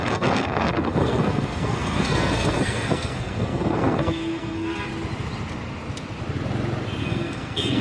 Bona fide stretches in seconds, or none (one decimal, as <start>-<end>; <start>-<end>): 4.9-7.0